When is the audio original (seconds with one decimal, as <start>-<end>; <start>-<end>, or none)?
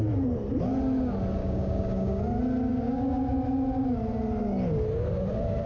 0.0-1.4; 2.2-2.7; 3.2-5.7